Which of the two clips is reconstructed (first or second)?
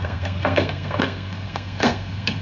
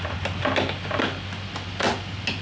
first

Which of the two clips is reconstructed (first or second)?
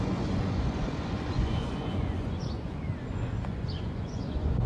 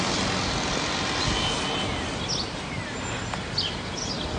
first